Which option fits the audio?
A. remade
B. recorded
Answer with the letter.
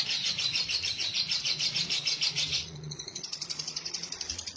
A